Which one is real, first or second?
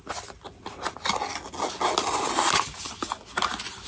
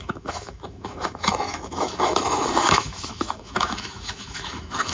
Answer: first